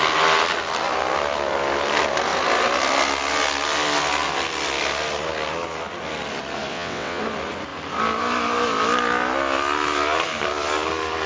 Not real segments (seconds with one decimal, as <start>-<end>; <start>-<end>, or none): 6.7-7.2